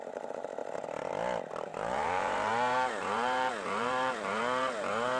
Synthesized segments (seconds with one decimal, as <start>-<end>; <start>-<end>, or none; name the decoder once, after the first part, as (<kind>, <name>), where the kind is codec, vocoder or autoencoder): 0.0-0.6 (vocoder, BigVGAN v2); 1.5-5.2

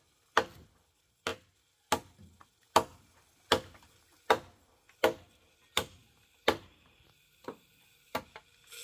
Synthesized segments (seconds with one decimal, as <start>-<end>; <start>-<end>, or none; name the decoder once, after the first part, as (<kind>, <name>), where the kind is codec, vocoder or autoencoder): none

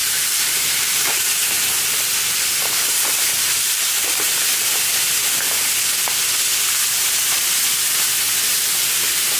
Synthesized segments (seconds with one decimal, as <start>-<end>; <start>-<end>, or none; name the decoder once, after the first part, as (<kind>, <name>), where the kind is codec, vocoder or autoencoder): 0.0-1.2 (vocoder, BigVGAN v2); 3.3-3.9

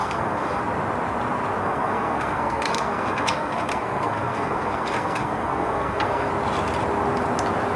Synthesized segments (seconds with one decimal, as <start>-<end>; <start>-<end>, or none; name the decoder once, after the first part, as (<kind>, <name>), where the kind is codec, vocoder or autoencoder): 0.0-0.6 (codec, SNAC); 1.6-6.3

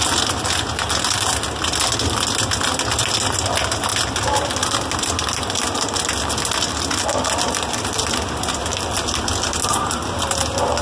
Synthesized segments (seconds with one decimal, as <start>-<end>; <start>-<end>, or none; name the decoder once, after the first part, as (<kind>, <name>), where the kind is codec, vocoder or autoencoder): none

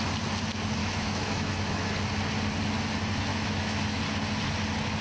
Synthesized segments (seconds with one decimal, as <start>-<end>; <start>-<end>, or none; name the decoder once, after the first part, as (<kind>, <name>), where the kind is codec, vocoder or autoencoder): 0.8-1.9 (autoencoder, DAC-VAE); 3.3-4.0

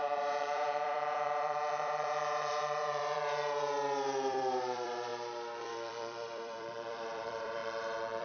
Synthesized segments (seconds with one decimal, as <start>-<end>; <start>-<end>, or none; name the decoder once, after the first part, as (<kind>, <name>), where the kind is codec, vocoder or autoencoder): 0.0-5.1 (vocoder, BigVGAN v2); 5.7-7.6